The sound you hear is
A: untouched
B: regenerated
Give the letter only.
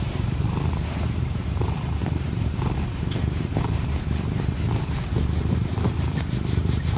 B